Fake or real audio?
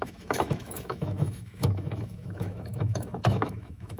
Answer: fake